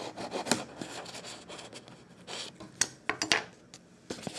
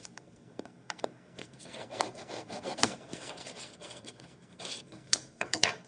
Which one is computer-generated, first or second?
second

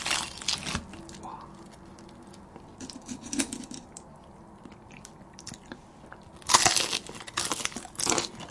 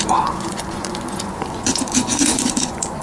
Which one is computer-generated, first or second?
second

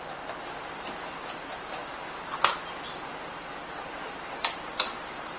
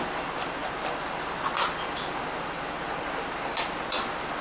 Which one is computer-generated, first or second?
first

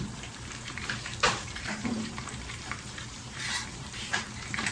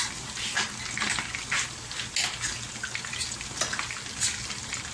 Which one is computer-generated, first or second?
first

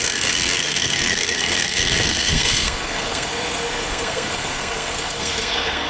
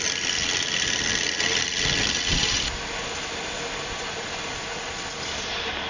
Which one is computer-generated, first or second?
first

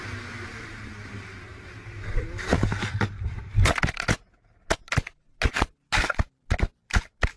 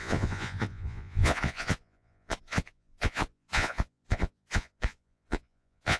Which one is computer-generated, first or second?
second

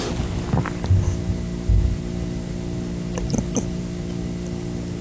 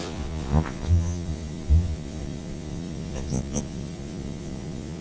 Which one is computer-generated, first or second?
second